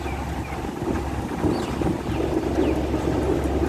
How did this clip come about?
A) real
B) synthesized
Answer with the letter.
A